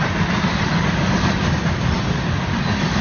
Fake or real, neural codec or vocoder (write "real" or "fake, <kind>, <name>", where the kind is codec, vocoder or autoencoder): real